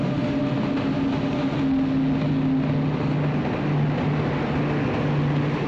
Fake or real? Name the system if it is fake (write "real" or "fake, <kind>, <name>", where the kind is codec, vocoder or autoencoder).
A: real